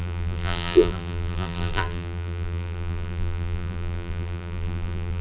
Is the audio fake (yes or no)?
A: yes